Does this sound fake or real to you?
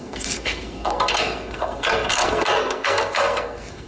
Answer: fake